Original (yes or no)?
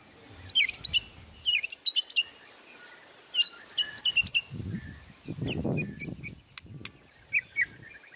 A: yes